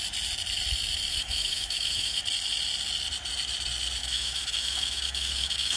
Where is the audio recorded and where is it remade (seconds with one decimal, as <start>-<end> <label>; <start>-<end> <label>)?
0.0-1.1 recorded; 1.1-2.2 remade; 2.2-4.0 recorded; 4.0-5.8 remade